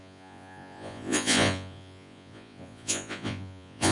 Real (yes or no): no